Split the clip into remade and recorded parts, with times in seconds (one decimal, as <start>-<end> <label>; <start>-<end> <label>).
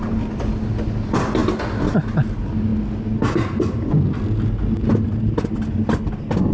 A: 0.0-6.5 recorded